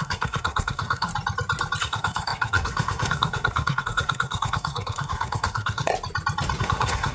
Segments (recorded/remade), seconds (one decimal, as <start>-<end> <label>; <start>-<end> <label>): 0.0-1.1 remade; 1.1-1.8 recorded; 1.8-5.9 remade; 5.9-6.6 recorded; 6.6-7.1 remade